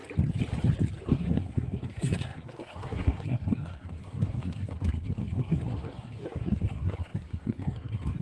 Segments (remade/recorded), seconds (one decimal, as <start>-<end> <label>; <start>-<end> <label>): 0.0-1.1 recorded; 1.1-8.2 remade